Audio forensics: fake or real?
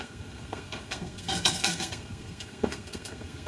fake